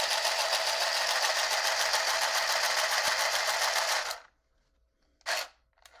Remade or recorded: recorded